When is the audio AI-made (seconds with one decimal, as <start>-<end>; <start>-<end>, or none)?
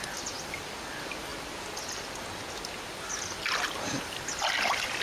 none